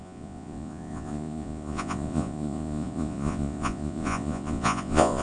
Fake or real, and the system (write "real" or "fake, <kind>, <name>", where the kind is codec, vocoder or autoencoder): fake, vocoder, Vocos